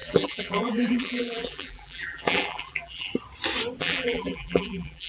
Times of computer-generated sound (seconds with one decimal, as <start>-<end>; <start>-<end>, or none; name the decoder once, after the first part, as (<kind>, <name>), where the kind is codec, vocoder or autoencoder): 0.0-3.1 (vocoder, BigVGAN v2); 3.8-5.1